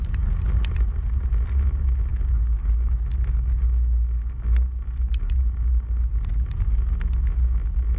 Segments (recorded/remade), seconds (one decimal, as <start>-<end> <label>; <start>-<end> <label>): 0.0-8.0 recorded